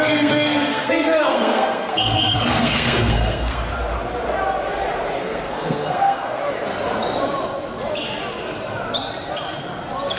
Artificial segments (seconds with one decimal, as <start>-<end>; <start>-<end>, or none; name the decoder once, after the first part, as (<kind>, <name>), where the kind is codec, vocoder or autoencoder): 0.0-3.6 (codec, SNAC); 5.2-6.4